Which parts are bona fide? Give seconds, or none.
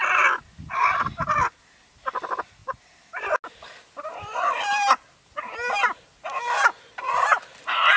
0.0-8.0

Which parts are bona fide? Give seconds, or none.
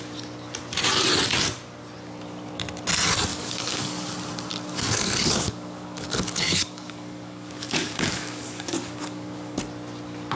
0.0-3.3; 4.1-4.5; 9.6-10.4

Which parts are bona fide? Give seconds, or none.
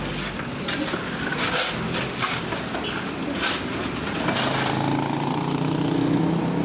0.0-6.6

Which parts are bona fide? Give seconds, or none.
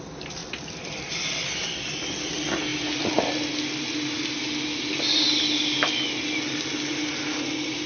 0.0-7.9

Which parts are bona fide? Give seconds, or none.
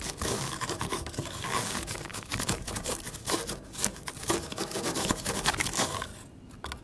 6.1-6.8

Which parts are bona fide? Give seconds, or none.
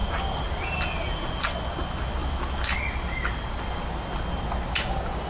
0.0-5.3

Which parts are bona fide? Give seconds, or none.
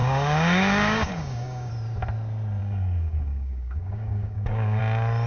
1.7-2.6; 4.8-5.3